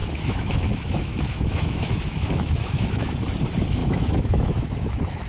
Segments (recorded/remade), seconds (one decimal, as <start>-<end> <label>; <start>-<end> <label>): 0.0-3.2 remade; 3.2-3.8 recorded; 3.8-5.3 remade